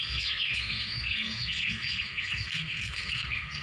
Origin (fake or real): fake